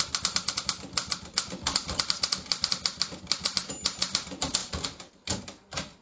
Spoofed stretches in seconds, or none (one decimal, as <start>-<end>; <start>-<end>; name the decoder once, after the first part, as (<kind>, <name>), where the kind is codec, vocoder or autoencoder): none